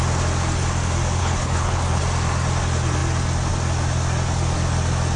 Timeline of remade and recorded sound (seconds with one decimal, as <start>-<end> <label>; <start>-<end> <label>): 0.0-1.2 recorded; 1.2-2.0 remade; 2.0-5.2 recorded